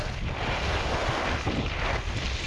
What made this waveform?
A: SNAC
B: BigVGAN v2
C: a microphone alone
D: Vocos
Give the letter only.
C